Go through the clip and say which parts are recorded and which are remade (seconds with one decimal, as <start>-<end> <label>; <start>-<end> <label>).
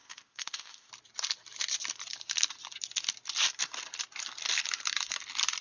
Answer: 0.0-0.9 remade; 0.9-5.6 recorded